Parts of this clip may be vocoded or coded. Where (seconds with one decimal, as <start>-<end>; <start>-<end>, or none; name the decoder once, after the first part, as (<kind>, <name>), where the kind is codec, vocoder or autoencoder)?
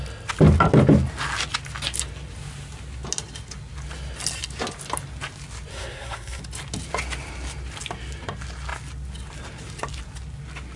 5.7-6.4 (codec, SNAC)